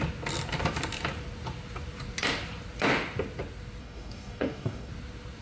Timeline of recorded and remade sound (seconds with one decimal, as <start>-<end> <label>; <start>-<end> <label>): 0.0-3.8 recorded; 3.8-4.9 remade; 4.9-5.4 recorded